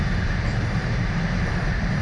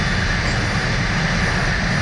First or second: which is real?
second